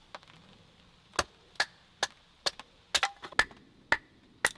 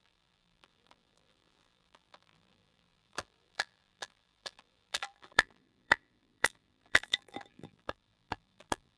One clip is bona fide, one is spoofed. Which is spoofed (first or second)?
second